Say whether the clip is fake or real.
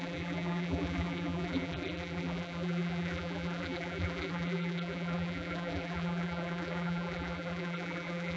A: fake